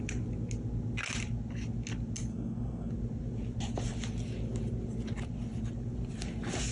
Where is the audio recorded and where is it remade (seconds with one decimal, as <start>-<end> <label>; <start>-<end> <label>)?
0.0-2.3 recorded; 2.3-2.9 remade; 2.9-6.7 recorded